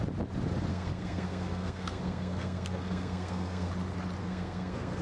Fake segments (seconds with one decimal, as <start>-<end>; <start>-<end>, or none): 0.7-3.7; 4.2-5.0